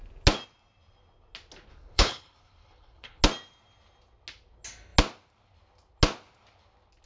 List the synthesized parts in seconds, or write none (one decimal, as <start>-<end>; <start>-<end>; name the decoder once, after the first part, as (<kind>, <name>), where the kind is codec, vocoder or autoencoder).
1.7-3.2 (codec, HILCodec)